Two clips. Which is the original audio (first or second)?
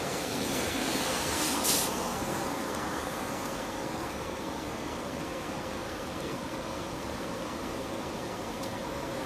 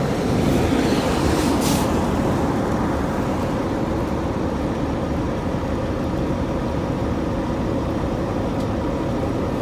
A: second